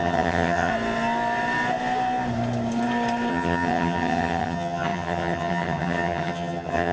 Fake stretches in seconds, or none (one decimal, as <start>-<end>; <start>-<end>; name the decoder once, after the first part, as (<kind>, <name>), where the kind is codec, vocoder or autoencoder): 0.0-0.7 (vocoder, HiFi-GAN); 3.3-6.9